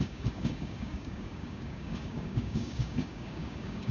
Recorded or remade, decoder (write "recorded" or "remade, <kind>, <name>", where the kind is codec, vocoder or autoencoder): remade, codec, DAC